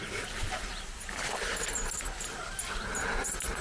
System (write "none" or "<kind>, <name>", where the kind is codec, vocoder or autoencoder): none